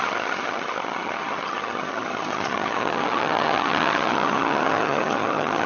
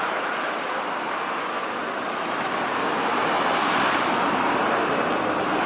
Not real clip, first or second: first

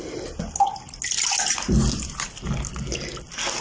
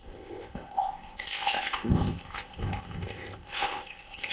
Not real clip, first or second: second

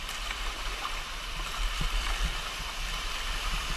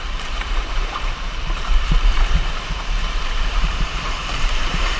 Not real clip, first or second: second